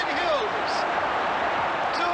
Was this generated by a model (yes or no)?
yes